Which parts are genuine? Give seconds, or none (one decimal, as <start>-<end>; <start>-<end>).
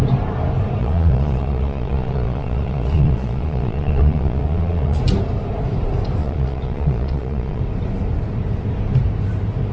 0.0-0.8; 5.0-6.2; 7.6-9.7